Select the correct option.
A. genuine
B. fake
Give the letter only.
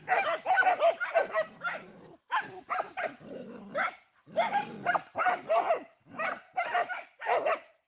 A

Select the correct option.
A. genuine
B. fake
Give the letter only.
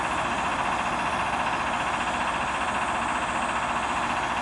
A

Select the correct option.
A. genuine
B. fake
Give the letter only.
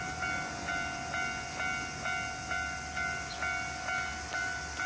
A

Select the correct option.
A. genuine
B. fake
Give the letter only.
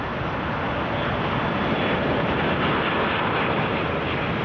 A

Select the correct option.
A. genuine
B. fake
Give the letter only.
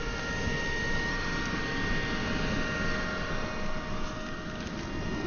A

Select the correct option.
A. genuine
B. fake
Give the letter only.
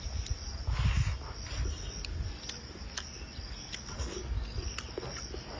A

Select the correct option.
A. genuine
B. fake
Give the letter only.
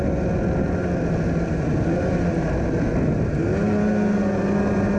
A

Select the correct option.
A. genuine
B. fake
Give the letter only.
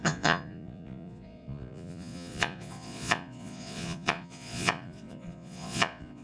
B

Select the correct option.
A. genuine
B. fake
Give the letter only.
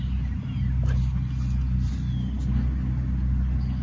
A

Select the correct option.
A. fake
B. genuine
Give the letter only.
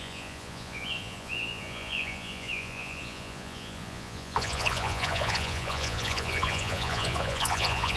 A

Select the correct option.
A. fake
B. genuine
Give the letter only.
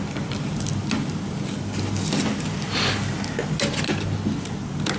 B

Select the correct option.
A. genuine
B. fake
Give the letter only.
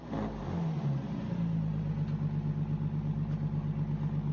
A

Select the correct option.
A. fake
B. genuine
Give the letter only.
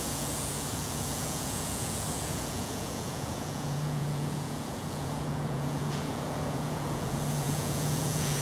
A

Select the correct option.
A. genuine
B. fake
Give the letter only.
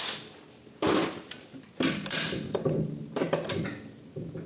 A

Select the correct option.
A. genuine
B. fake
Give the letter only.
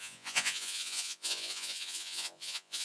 B